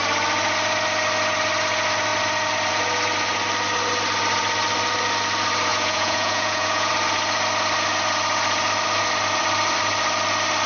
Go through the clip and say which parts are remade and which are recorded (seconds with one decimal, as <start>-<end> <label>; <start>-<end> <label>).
0.0-5.7 recorded; 5.7-6.9 remade; 6.9-10.7 recorded